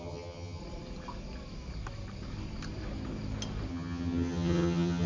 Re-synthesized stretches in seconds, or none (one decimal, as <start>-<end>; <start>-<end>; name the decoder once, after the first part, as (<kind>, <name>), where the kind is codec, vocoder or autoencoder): 0.0-0.6 (vocoder, HiFi-GAN); 3.7-5.1